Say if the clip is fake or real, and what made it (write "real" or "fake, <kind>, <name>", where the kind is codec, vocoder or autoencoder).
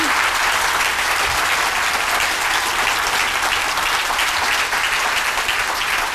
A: real